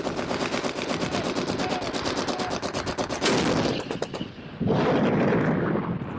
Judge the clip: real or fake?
real